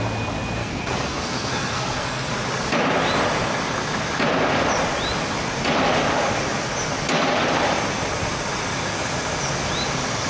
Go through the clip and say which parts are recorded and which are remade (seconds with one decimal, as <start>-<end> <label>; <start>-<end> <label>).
0.0-0.6 recorded; 0.6-2.3 remade; 2.3-10.3 recorded